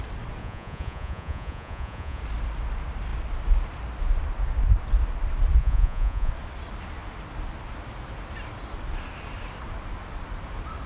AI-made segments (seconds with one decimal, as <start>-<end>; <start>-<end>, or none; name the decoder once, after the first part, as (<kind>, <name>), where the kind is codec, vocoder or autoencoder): 0.4-2.2 (vocoder, Vocos); 5.6-6.3